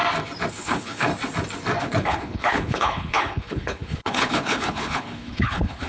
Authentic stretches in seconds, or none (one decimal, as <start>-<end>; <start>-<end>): 0.0-0.5; 1.1-1.8